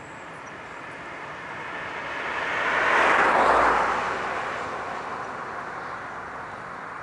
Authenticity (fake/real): real